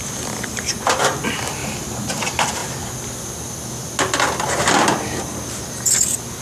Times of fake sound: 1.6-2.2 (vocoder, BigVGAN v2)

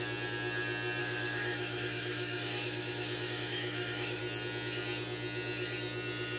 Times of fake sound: 1.0-4.2 (autoencoder, DAC-VAE)

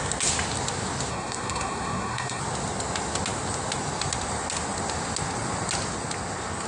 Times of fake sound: 1.1-2.4 (codec, SNAC)

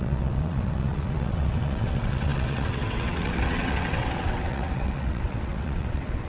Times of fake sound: 0.0-6.3 (vocoder, WaveNeXt)

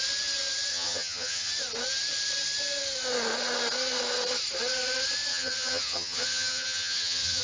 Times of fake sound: 0.7-1.5 (vocoder, HiFi-GAN); 5.3-7.4

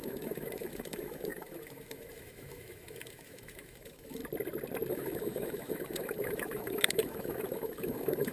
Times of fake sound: 0.0-4.2 (autoencoder, DAC-VAE); 4.9-8.3

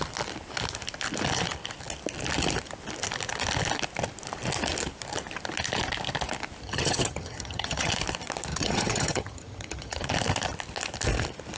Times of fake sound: 6.6-7.9 (vocoder, HiFi-GAN); 8.5-10.0